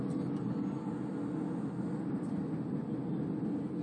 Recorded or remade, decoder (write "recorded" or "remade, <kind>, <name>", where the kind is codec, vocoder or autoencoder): recorded